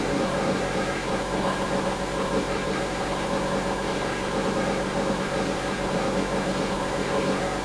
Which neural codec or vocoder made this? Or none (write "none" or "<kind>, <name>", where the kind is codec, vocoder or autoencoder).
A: codec, SNAC